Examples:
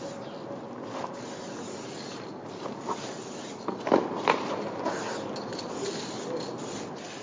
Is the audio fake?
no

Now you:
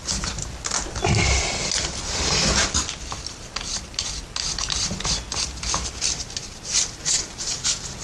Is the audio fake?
no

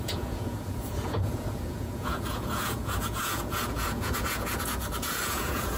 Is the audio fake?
yes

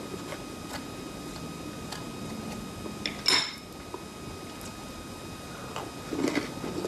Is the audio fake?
no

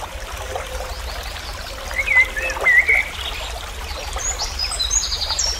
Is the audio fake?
no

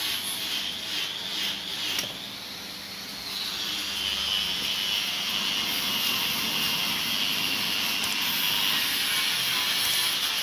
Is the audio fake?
no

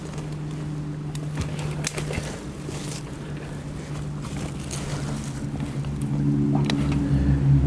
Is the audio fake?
no